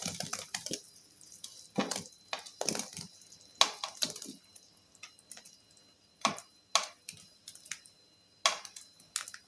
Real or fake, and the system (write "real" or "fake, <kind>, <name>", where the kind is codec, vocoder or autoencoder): real